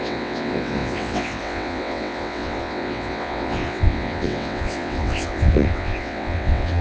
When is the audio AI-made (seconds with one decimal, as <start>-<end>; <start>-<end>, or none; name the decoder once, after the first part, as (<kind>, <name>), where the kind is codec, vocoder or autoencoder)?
0.0-6.8 (vocoder, WaveNeXt)